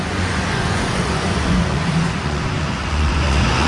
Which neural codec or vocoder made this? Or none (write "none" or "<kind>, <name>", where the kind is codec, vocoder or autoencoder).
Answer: vocoder, Vocos